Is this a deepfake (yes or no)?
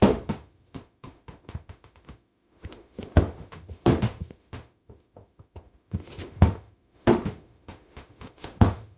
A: yes